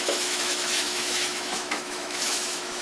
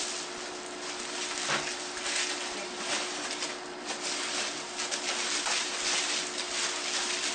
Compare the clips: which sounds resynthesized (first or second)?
first